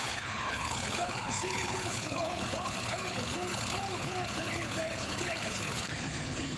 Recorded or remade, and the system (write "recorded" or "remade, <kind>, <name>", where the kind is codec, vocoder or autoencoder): remade, codec, HILCodec